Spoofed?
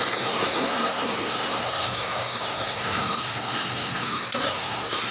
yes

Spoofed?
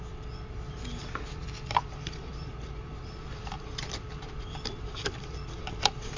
yes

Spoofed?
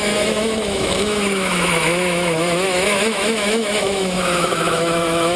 yes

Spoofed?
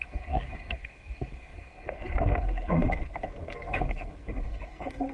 yes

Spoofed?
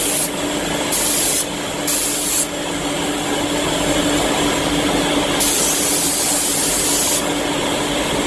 no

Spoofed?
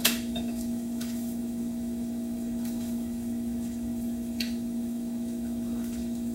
yes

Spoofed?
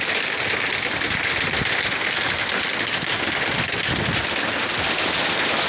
no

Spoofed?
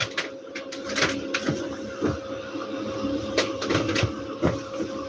no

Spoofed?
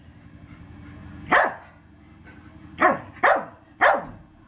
no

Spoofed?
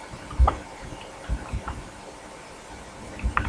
no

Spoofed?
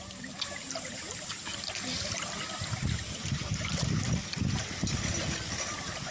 no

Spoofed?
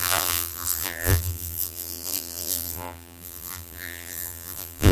yes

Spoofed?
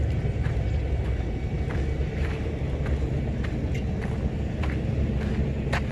no